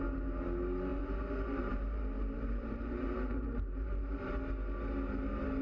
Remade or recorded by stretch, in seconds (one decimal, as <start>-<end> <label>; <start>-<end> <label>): 0.0-0.9 recorded; 0.9-4.3 remade; 4.3-5.6 recorded